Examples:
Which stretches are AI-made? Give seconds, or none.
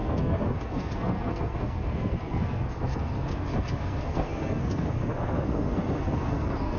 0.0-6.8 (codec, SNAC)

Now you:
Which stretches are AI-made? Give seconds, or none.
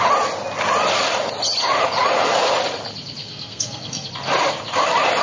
3.2-4.1 (codec, SNAC)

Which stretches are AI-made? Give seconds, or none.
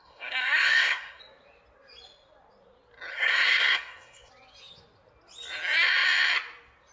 0.0-1.2 (codec, SNAC); 3.1-4.3